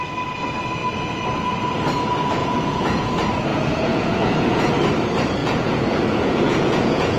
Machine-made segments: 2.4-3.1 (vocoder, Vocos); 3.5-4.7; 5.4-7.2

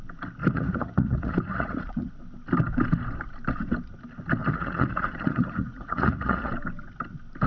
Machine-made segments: 0.4-2.1 (vocoder, Vocos); 4.4-6.5

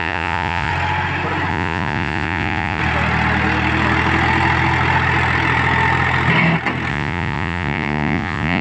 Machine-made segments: 0.0-0.7 (vocoder, Vocos); 1.5-2.8; 6.9-8.6

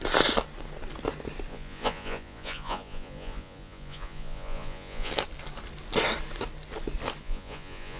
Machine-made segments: 1.5-5.1 (vocoder, Vocos); 7.2-8.0

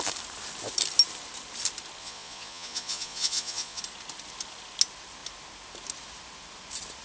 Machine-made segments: 2.0-3.8 (vocoder, Vocos)

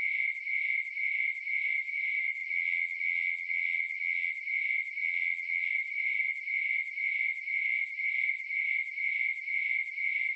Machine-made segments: 2.4-4.3 (vocoder, Vocos); 5.0-5.7

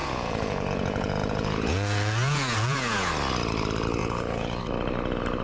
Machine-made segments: 0.0-3.1 (vocoder, Vocos); 4.0-4.6

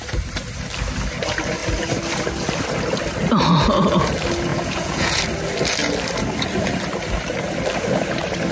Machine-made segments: 4.5-5.2 (vocoder, Vocos)